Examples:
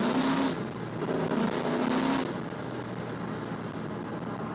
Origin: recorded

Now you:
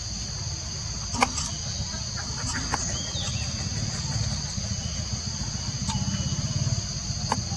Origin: recorded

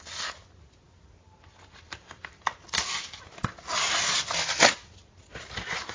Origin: recorded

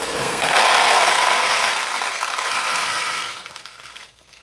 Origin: remade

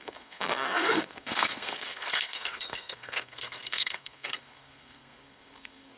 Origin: remade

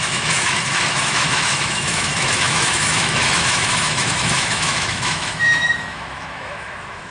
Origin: remade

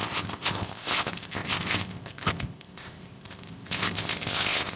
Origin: remade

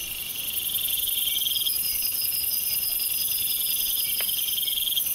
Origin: recorded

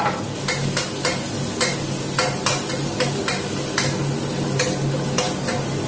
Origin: recorded